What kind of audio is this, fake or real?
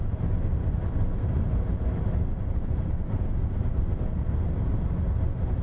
real